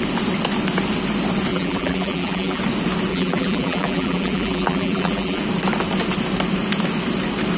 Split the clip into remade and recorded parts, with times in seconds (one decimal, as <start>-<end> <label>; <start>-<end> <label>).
0.0-1.5 recorded; 1.5-2.6 remade; 2.6-3.1 recorded; 3.1-5.4 remade; 5.4-7.6 recorded